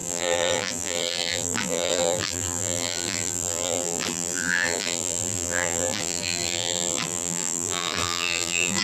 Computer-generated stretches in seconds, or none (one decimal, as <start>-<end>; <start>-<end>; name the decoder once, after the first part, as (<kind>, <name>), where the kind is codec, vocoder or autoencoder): 0.0-8.8 (vocoder, BigVGAN v2)